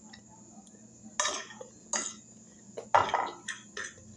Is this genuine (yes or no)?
yes